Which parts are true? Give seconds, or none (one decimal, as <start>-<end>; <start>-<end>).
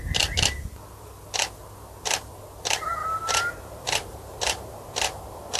0.0-3.0